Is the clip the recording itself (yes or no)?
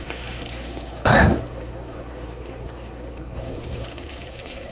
no